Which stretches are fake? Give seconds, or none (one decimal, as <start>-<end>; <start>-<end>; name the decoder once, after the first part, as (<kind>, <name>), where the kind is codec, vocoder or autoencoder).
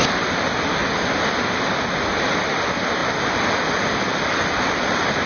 0.8-1.4 (vocoder, BigVGAN v2); 3.0-5.3